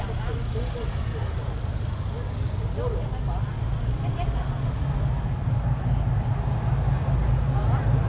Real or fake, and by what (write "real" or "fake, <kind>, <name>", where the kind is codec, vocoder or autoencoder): real